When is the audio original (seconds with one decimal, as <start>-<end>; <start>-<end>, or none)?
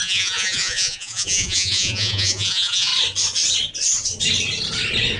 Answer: 2.9-5.2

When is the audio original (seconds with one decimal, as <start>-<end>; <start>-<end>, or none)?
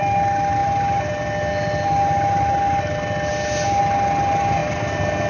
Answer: 0.0-5.3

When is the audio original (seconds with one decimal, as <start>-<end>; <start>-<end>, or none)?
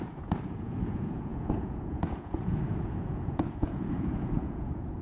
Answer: none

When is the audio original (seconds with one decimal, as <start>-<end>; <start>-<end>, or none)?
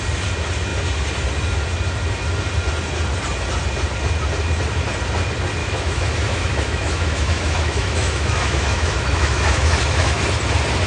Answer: 0.0-5.6; 10.2-10.9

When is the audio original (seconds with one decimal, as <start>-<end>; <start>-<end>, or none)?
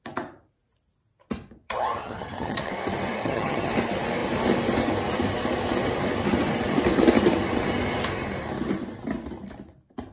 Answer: 0.0-2.0; 2.7-3.2; 3.7-10.1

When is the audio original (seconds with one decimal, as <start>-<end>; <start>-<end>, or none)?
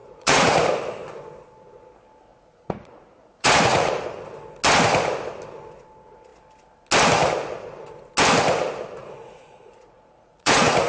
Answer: 0.6-2.3; 4.0-9.0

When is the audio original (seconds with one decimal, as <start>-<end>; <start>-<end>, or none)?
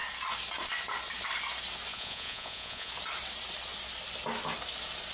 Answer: 0.0-1.9; 2.9-5.1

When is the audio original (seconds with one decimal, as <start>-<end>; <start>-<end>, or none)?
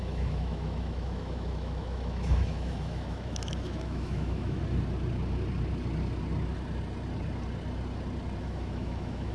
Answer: 4.6-8.4